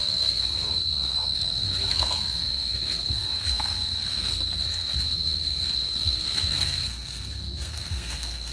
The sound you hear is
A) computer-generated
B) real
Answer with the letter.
A